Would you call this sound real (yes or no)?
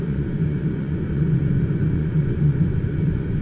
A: no